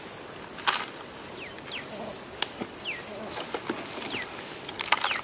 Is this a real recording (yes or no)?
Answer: yes